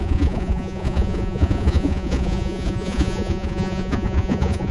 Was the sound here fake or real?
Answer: fake